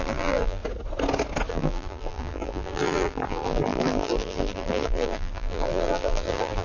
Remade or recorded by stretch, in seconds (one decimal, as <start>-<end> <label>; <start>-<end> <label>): 0.0-0.6 remade; 0.6-1.5 recorded; 1.5-6.6 remade

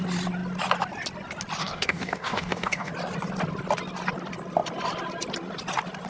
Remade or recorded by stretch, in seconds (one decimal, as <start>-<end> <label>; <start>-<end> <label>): 0.0-1.6 recorded; 1.6-2.9 remade; 2.9-6.1 recorded

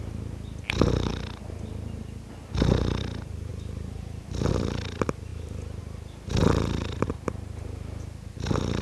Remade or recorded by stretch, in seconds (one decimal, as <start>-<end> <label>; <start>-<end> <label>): 0.0-3.5 recorded; 3.5-4.5 remade; 4.5-6.4 recorded; 6.4-7.1 remade; 7.1-8.8 recorded

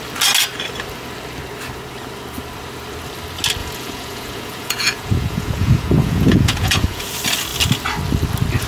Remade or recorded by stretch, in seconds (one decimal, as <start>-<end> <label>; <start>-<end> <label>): 0.0-3.6 recorded; 3.6-7.0 remade; 7.0-8.7 recorded

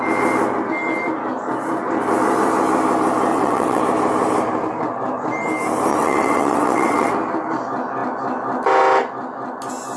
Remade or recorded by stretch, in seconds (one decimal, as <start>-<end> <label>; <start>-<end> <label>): 0.0-3.3 recorded; 3.3-3.8 remade; 3.8-5.9 recorded; 5.9-7.1 remade; 7.1-10.0 recorded

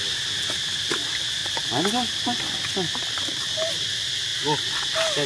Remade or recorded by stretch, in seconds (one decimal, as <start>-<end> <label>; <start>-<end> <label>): 0.0-1.4 recorded; 1.4-3.7 remade; 3.7-5.3 recorded

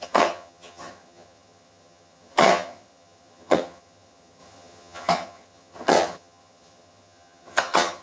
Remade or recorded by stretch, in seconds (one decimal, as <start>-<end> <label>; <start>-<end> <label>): 0.0-8.0 remade

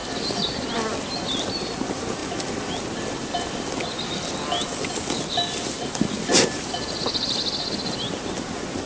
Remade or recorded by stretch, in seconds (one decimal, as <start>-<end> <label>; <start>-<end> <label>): 0.0-8.9 recorded